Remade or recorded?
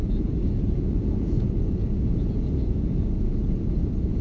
remade